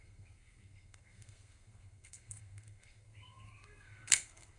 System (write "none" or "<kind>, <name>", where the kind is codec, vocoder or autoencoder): codec, SNAC